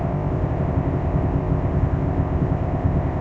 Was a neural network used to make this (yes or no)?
yes